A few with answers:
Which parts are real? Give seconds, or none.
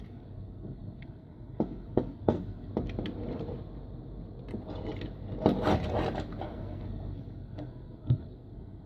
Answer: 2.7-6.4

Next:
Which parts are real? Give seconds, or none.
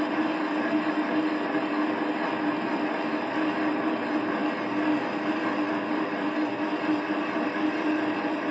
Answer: 0.0-8.5